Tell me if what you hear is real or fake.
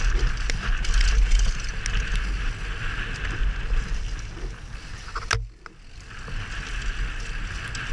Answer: real